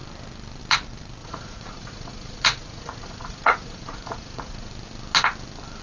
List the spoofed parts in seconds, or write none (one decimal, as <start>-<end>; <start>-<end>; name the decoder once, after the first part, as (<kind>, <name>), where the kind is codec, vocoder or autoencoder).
1.2-4.7 (vocoder, Vocos)